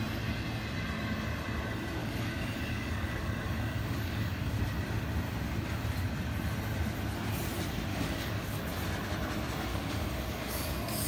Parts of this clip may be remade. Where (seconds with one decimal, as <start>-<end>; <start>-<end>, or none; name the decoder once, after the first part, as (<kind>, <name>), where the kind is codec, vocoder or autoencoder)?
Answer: 2.0-4.6 (codec, DAC); 7.9-8.6; 9.7-11.1